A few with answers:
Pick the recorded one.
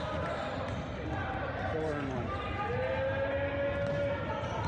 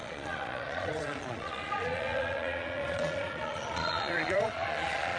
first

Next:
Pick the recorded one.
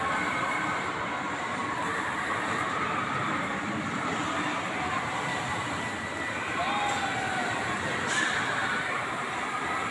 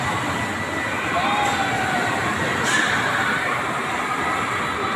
second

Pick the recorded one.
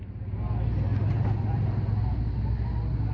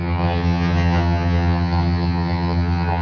first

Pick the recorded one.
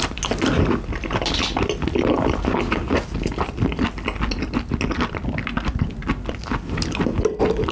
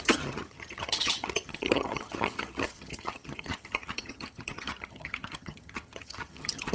first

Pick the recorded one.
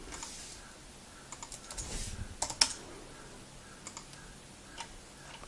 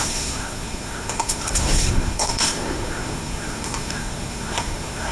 first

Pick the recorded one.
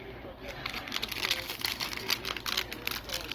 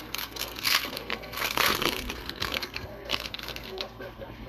first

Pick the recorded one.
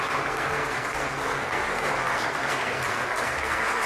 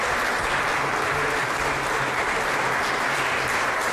second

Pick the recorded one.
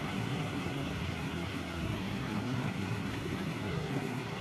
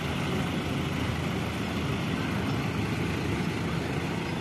second